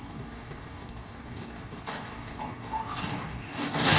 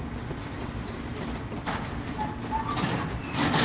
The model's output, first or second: first